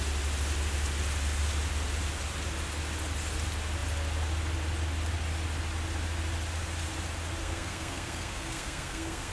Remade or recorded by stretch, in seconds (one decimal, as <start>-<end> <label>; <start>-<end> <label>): 0.0-7.4 recorded; 7.4-9.3 remade